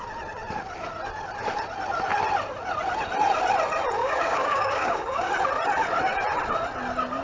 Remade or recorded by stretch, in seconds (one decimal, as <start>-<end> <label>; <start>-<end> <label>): 0.0-4.0 recorded; 4.0-5.3 remade; 5.3-7.2 recorded